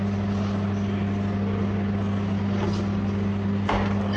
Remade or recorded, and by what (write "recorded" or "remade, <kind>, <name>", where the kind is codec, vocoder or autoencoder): recorded